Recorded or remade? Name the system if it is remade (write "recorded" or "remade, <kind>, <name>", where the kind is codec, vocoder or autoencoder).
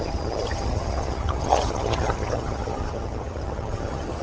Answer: remade, vocoder, HiFi-GAN